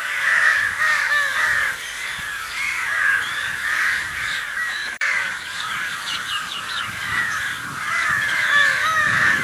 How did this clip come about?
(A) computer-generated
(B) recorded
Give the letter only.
A